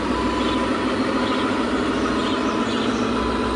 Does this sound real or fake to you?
real